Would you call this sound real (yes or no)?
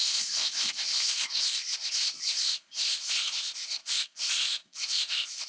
no